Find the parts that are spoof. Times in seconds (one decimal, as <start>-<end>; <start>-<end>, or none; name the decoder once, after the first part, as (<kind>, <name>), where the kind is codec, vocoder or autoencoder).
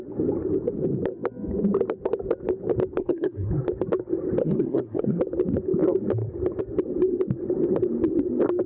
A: 3.0-3.5 (codec, SNAC); 4.4-5.2